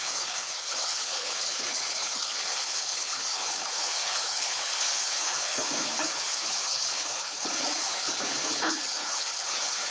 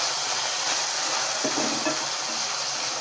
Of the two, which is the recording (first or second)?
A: second